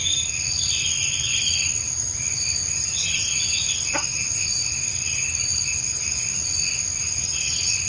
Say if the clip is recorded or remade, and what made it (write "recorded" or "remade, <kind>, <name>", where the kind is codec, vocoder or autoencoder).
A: recorded